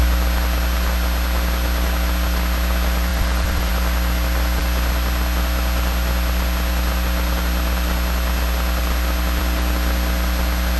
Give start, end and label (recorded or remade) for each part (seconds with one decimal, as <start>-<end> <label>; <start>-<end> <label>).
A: 0.0-3.1 recorded; 3.1-3.7 remade; 3.7-10.8 recorded